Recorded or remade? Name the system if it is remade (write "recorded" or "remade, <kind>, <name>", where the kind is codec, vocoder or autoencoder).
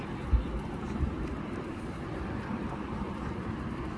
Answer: remade, vocoder, BigVGAN v2